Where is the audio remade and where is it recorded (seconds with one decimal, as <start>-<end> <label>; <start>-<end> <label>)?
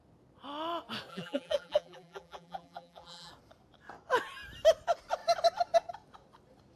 0.0-1.1 recorded; 1.1-3.3 remade; 3.3-6.8 recorded